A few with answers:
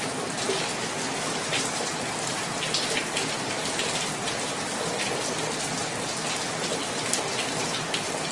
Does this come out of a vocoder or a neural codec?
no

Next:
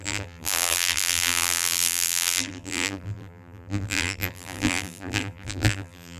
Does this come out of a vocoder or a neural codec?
yes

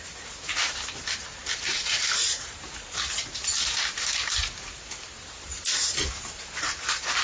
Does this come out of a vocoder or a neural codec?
yes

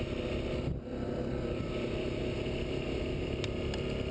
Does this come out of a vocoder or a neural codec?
no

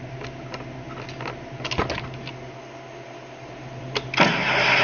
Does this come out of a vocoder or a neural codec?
no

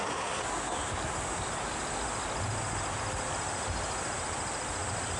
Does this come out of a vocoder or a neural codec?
no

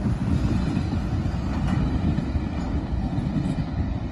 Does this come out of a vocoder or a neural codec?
no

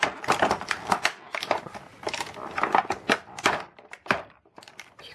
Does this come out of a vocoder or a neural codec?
yes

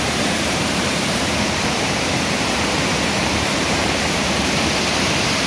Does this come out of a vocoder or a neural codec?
yes